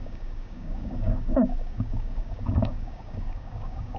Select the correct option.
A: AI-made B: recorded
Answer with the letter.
A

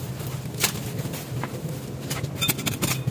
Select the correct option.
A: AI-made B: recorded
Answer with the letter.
B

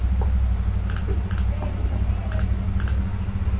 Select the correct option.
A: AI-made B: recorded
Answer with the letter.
B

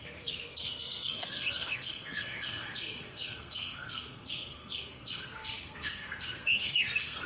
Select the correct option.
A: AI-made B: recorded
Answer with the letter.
A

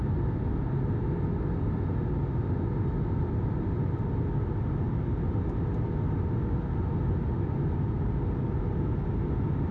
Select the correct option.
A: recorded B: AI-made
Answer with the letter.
A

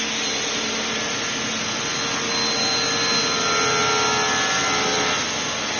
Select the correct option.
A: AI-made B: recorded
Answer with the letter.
B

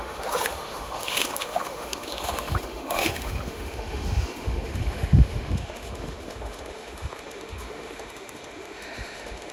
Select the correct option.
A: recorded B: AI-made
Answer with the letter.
B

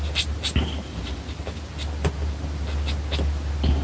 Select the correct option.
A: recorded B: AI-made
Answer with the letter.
A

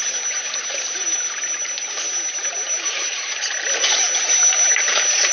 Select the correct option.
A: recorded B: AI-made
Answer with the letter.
A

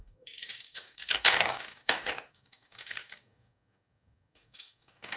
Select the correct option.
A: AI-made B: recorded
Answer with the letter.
A